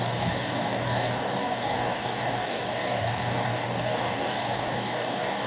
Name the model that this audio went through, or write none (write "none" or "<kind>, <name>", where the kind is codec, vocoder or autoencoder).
codec, DAC